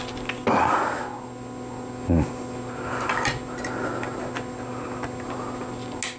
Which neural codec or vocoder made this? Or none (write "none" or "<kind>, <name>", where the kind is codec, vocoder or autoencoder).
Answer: none